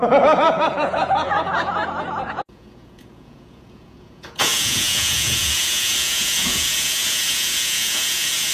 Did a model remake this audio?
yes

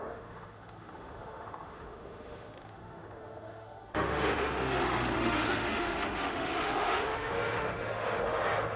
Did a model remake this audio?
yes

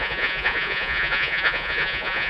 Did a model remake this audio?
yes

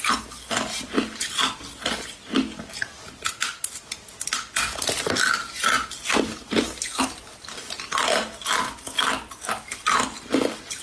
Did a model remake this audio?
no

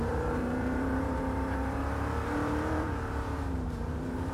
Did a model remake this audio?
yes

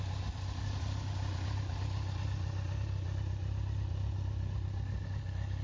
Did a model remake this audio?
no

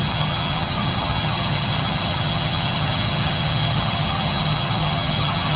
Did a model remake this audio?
yes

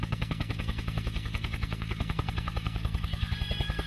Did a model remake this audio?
yes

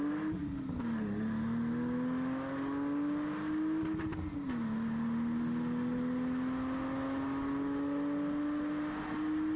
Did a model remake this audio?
no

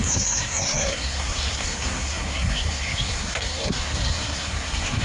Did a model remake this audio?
yes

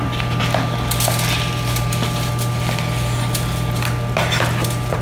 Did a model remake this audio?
no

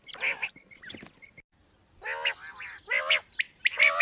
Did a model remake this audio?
no